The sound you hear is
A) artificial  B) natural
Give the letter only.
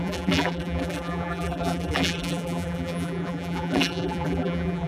A